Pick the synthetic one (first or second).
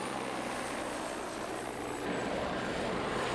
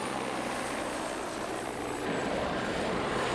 second